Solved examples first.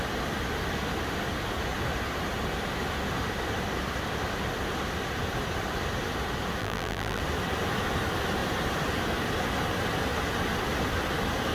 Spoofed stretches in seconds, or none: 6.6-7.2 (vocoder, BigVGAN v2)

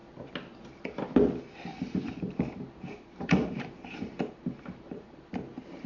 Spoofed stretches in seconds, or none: 1.7-5.2 (vocoder, BigVGAN v2)

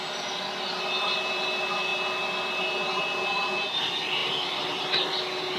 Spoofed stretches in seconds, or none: 4.2-4.8 (vocoder, BigVGAN v2)